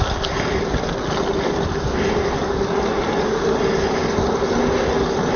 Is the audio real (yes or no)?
yes